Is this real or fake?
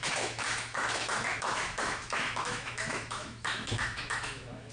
fake